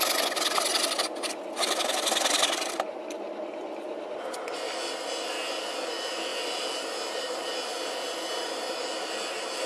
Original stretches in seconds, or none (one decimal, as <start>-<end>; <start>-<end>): 0.0-9.7